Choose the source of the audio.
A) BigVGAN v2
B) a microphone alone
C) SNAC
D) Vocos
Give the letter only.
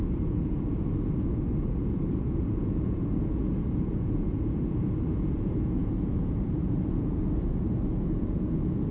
D